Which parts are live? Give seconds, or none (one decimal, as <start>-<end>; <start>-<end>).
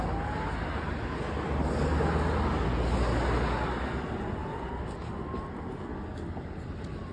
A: 0.0-7.1